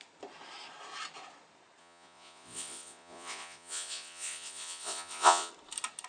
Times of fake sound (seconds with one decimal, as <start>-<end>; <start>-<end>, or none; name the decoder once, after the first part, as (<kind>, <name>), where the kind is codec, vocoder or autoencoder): 1.8-5.5 (vocoder, Vocos)